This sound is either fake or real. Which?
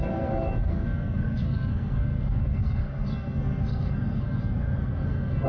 fake